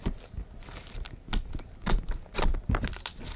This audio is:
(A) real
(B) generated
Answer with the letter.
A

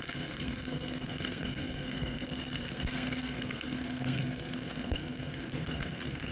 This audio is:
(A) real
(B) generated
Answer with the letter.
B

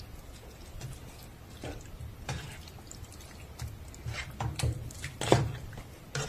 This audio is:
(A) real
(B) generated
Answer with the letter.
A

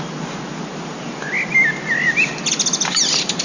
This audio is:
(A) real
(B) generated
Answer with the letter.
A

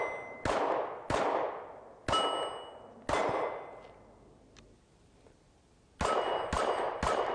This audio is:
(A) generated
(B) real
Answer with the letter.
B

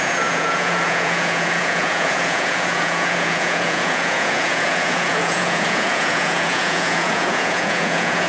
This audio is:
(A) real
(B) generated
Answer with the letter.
B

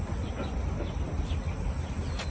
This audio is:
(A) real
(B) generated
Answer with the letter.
A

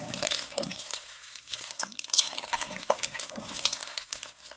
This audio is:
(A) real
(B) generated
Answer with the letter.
B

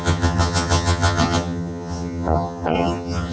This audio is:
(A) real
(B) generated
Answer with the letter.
B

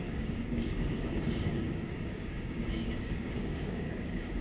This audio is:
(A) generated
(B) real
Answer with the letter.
A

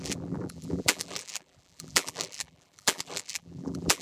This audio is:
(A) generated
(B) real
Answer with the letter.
A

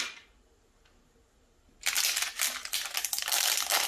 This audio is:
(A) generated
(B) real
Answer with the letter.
B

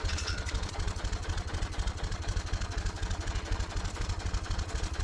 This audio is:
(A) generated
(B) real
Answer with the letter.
A